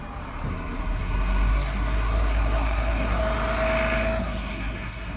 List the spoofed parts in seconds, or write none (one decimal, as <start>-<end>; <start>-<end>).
0.5-3.2; 4.2-5.2